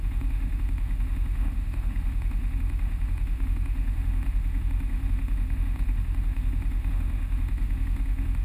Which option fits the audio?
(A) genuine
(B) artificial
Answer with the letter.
B